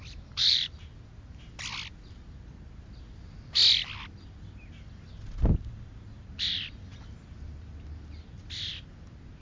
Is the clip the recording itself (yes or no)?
yes